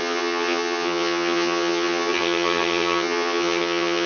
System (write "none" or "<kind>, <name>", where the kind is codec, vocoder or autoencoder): vocoder, HiFi-GAN